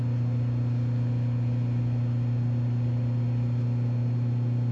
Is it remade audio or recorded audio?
recorded